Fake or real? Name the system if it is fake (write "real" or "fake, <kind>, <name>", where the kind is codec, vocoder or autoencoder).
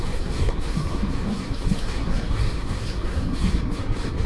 fake, codec, SNAC